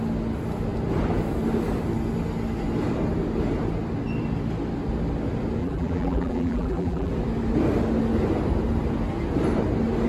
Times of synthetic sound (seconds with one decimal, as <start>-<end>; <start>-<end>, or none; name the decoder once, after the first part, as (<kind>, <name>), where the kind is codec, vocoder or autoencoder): 5.6-7.1 (vocoder, BigVGAN v2)